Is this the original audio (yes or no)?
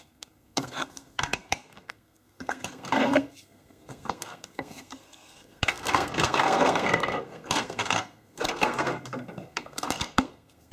no